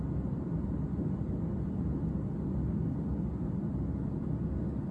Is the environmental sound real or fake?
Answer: real